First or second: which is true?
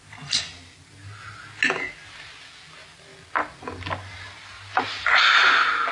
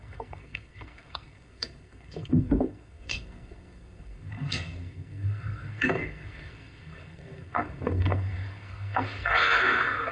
first